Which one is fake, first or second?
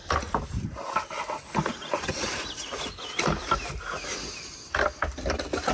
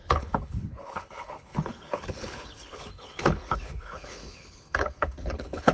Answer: second